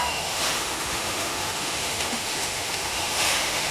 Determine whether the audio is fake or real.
fake